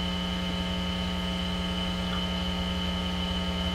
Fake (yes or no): no